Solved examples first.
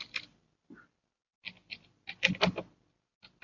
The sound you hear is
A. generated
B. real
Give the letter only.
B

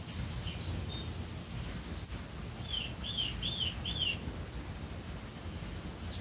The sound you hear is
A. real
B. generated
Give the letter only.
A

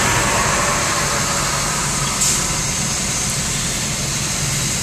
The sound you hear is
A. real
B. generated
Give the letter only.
A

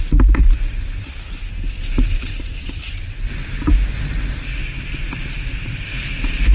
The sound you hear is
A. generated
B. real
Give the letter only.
B